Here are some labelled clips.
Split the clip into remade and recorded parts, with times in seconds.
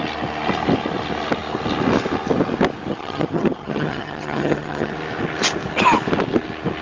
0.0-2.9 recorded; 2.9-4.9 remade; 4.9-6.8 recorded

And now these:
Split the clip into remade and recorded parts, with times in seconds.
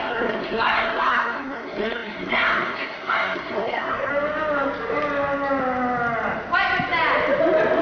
0.0-4.1 remade; 4.1-7.8 recorded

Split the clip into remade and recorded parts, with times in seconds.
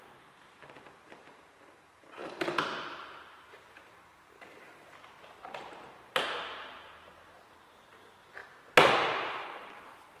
0.0-8.4 remade; 8.4-8.9 recorded; 8.9-10.2 remade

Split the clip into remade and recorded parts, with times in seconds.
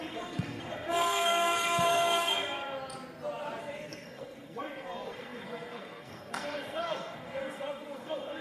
0.0-2.4 remade; 2.4-3.6 recorded; 3.6-8.4 remade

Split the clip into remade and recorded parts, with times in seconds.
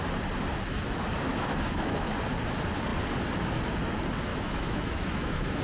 0.0-1.3 recorded; 1.3-2.1 remade; 2.1-4.3 recorded; 4.3-5.6 remade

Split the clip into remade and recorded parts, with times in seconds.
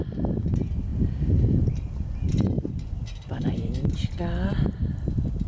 0.0-0.9 recorded; 0.9-4.2 remade; 4.2-5.5 recorded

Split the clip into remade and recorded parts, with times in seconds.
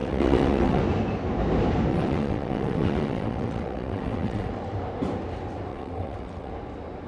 0.0-0.8 remade; 0.8-1.9 recorded; 1.9-4.5 remade; 4.5-5.7 recorded; 5.7-6.5 remade; 6.5-7.1 recorded